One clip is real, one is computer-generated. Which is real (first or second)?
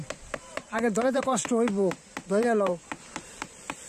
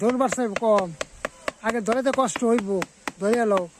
second